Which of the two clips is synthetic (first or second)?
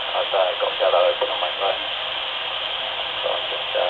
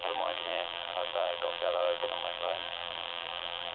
second